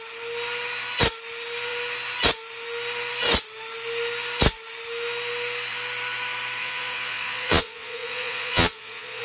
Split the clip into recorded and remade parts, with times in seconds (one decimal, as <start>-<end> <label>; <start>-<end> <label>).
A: 0.0-6.6 recorded; 6.6-9.2 remade